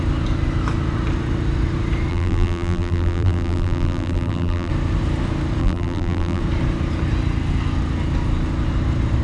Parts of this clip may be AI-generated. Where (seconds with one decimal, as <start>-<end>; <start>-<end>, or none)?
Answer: 2.1-4.7; 5.6-6.4